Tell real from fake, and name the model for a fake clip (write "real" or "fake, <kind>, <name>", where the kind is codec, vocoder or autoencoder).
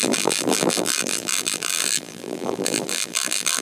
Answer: fake, vocoder, BigVGAN v2